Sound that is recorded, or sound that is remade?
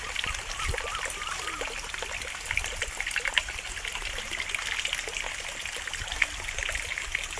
recorded